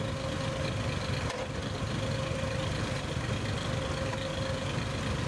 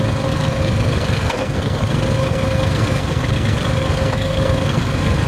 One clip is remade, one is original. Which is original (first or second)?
first